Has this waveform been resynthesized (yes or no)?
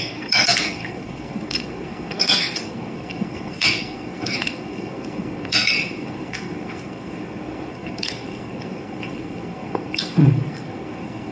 yes